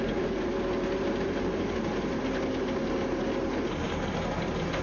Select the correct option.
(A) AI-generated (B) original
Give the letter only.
B